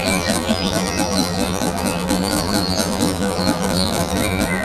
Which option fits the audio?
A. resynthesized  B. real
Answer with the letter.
A